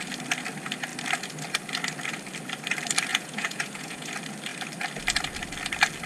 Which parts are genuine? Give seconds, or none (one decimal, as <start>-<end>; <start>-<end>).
0.0-3.1; 4.1-6.1